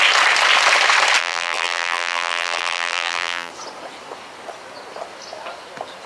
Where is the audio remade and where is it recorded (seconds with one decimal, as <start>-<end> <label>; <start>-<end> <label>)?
0.0-1.2 recorded; 1.2-3.5 remade; 3.5-6.1 recorded